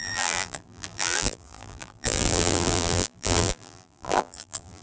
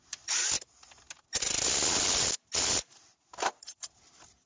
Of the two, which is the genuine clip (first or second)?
second